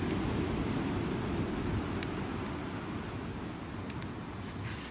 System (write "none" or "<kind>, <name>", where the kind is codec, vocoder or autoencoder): none